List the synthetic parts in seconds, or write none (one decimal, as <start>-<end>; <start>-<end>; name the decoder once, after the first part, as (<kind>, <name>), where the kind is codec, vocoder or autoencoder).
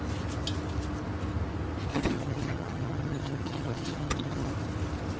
1.9-4.5 (vocoder, HiFi-GAN)